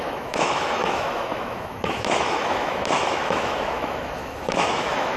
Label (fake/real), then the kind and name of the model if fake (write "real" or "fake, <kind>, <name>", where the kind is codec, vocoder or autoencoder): fake, autoencoder, DAC-VAE